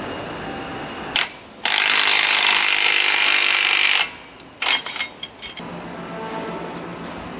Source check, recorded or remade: recorded